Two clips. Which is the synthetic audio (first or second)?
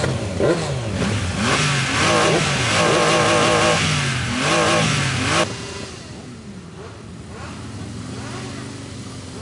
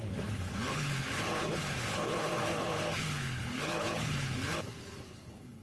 second